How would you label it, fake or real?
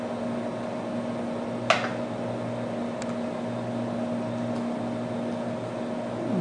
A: real